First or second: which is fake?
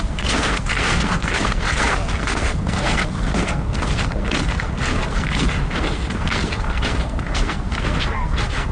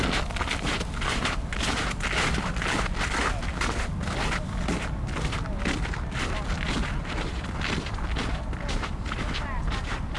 first